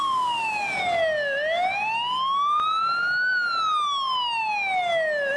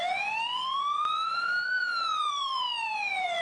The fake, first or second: second